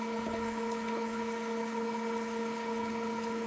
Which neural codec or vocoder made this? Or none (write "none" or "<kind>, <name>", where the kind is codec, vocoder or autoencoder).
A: codec, HILCodec